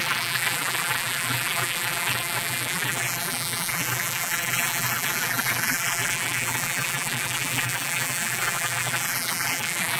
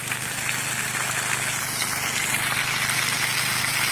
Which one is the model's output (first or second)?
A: first